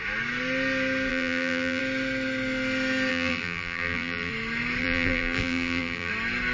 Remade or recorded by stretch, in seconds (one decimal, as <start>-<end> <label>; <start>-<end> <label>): 0.0-1.1 recorded; 1.1-1.8 remade; 1.8-3.1 recorded; 3.1-4.3 remade; 4.3-4.8 recorded; 4.8-6.1 remade; 6.1-6.5 recorded